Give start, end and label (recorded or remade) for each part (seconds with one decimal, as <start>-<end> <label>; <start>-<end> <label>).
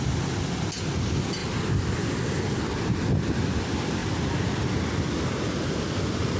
0.0-6.4 recorded